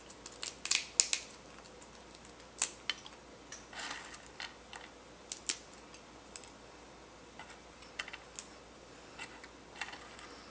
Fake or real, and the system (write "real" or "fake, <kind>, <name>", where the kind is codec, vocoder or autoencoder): real